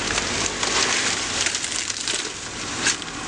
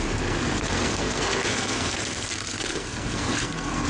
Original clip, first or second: first